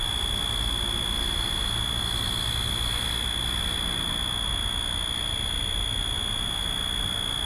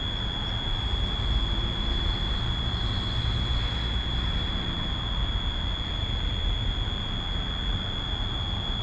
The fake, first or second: second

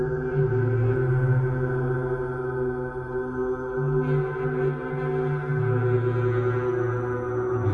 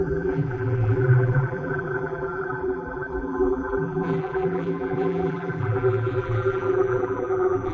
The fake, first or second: second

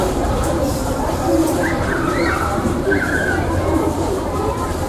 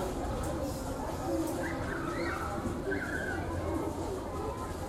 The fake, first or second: first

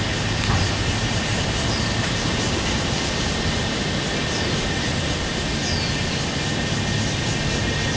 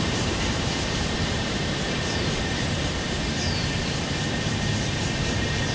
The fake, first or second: second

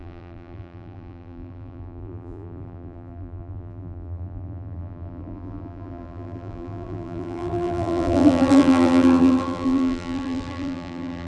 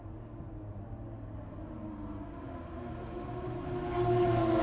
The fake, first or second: first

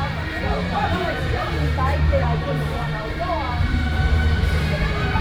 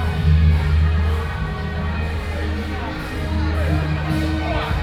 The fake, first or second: first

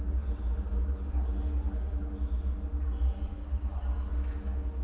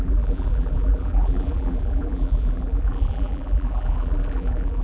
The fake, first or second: second